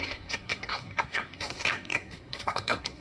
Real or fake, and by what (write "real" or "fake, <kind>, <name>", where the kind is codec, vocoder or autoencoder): fake, codec, SNAC